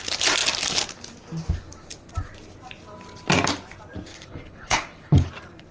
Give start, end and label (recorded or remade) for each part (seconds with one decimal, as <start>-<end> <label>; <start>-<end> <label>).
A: 0.0-4.1 recorded; 4.1-5.3 remade; 5.3-5.7 recorded